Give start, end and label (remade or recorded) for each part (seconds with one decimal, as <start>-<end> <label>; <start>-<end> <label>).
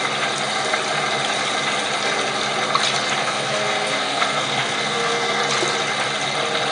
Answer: 0.0-3.2 recorded; 3.2-5.4 remade; 5.4-6.7 recorded